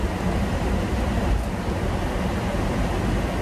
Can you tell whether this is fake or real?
real